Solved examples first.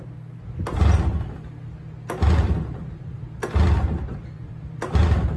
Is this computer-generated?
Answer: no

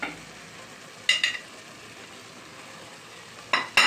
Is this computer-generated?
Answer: no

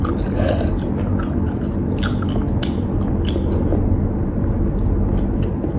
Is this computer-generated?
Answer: no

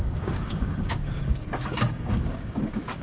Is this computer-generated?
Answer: yes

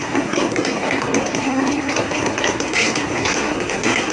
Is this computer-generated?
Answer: yes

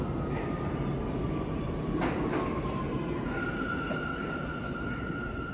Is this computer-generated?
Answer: no